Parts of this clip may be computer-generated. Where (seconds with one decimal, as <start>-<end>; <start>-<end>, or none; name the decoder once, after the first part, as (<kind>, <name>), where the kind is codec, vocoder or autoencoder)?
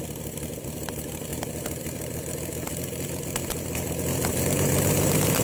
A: 4.3-5.4 (vocoder, BigVGAN v2)